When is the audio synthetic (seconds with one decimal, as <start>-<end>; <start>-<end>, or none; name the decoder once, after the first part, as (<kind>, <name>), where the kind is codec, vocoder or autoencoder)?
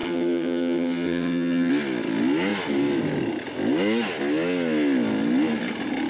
0.0-1.7 (vocoder, HiFi-GAN)